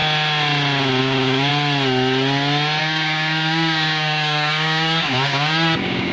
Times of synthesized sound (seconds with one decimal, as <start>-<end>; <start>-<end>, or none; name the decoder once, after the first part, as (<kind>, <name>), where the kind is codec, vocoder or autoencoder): 1.0-1.5 (codec, DAC); 2.8-6.1